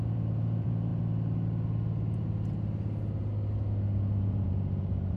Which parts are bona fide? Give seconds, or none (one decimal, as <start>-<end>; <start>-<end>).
0.9-4.0